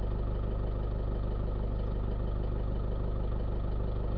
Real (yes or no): yes